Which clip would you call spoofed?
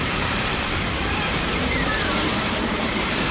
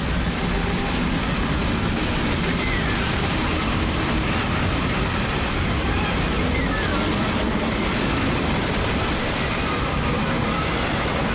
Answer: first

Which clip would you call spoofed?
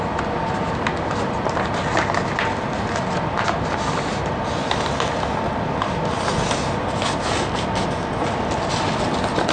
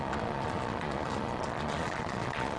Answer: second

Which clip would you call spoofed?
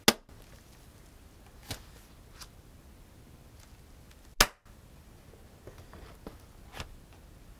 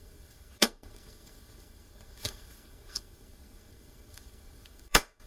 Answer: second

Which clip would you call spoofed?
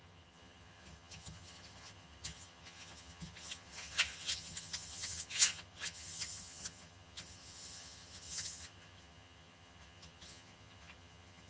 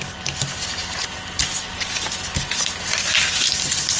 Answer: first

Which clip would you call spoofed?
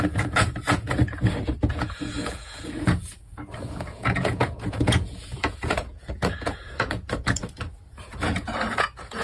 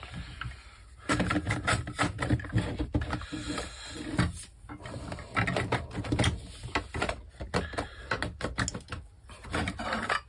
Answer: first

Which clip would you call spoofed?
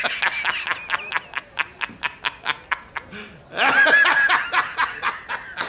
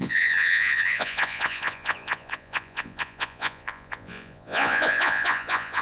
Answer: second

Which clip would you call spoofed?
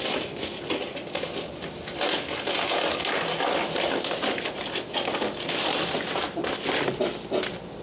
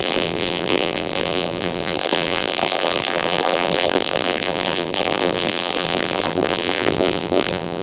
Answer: second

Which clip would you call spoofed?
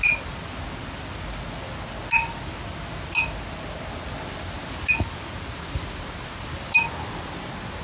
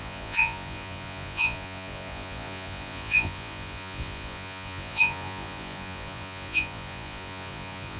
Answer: second